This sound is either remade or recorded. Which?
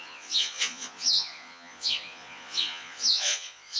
remade